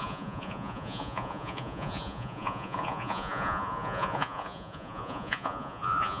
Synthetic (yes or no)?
yes